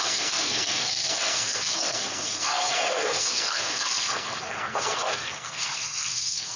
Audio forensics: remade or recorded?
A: remade